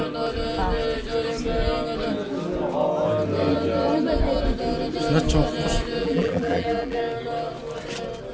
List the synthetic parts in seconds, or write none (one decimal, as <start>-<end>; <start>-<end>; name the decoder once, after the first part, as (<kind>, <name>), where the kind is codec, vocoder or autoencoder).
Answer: 6.0-7.0 (vocoder, BigVGAN v2)